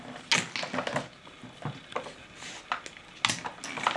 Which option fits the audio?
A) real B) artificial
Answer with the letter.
A